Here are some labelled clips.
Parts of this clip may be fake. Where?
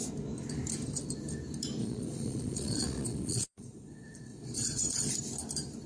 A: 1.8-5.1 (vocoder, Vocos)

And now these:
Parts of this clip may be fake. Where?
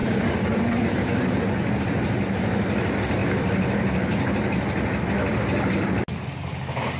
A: none